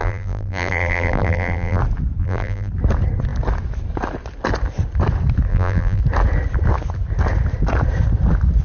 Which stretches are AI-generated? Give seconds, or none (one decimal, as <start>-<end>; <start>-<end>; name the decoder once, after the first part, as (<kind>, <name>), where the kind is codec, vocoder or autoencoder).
0.0-1.8 (vocoder, BigVGAN v2); 2.2-2.7; 5.5-6.0